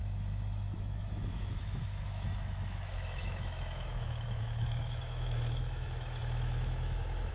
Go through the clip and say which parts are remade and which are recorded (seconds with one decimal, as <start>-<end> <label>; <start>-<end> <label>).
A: 0.0-7.3 remade